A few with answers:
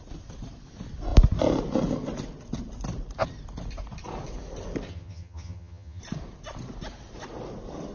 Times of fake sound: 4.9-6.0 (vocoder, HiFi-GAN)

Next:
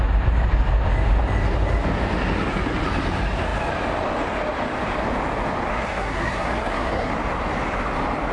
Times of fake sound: 5.7-7.1 (codec, SNAC)

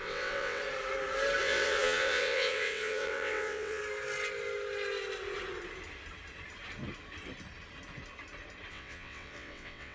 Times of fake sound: 0.0-0.6 (vocoder, WaveNeXt); 1.4-3.8; 8.7-9.9

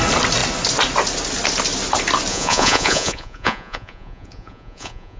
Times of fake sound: 2.3-5.2 (vocoder, Vocos)

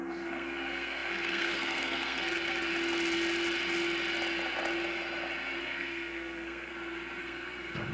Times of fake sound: 0.0-2.7 (codec, SNAC); 5.6-6.7; 7.2-7.9

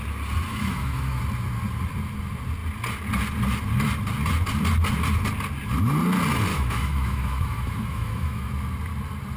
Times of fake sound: 0.5-1.2 (autoencoder, DAC-VAE); 6.5-8.5

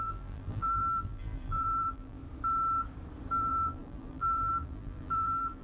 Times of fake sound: 0.0-2.2 (vocoder, BigVGAN v2); 3.3-5.6